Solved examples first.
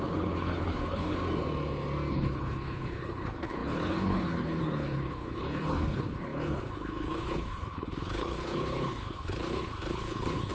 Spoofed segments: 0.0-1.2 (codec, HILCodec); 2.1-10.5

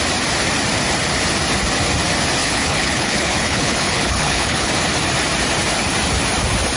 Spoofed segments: 2.4-4.7 (codec, HILCodec)

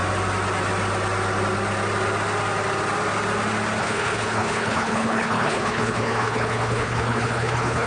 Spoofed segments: 3.8-7.9 (codec, HILCodec)

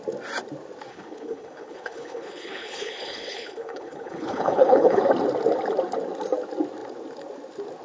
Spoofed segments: 0.9-5.0 (codec, HILCodec)

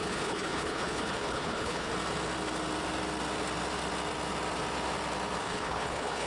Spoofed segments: 0.0-1.9 (codec, HILCodec); 5.4-6.3